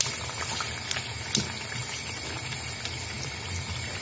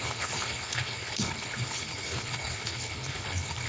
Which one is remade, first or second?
second